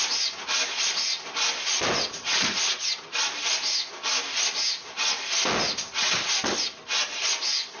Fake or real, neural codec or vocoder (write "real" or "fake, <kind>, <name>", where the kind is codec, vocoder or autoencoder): real